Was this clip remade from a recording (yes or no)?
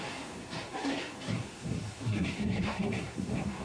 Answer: yes